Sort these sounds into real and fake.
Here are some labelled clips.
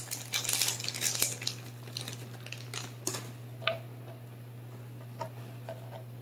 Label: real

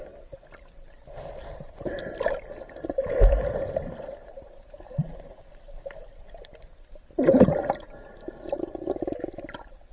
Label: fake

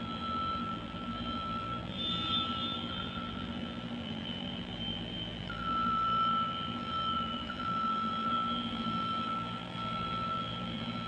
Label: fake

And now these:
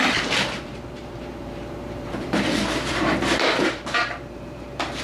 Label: fake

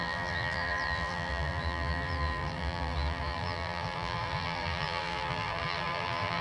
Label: fake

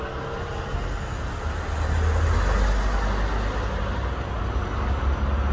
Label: real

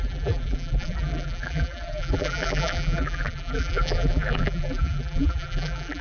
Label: fake